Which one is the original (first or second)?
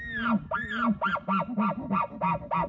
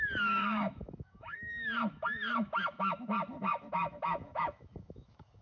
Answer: first